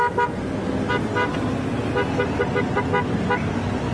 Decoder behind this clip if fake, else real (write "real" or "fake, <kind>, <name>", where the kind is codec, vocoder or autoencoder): real